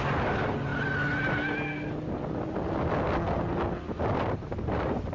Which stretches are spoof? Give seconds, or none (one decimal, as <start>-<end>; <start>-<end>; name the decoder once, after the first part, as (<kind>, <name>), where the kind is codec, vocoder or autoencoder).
0.0-0.7 (vocoder, BigVGAN v2); 3.8-5.1